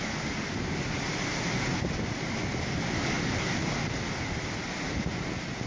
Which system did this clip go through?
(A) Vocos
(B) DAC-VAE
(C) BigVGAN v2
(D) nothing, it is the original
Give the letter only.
D